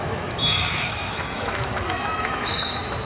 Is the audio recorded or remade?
remade